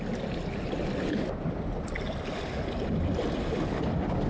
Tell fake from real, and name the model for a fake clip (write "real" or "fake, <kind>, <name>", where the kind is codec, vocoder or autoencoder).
real